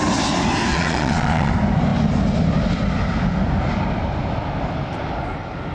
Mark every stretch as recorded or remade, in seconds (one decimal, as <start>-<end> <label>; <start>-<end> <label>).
0.0-0.7 recorded; 0.7-1.5 remade; 1.5-5.7 recorded